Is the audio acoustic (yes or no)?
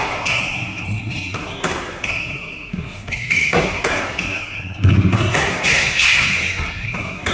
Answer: no